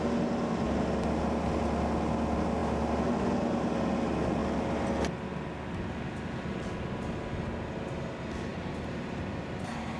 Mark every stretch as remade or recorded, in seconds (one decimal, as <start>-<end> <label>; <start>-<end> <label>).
0.0-8.5 recorded; 8.5-9.5 remade; 9.5-10.0 recorded